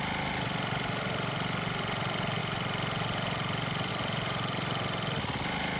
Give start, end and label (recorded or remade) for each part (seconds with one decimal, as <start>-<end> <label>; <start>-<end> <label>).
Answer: 0.0-5.8 recorded